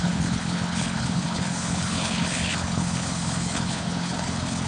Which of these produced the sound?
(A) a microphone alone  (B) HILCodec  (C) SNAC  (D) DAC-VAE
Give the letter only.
B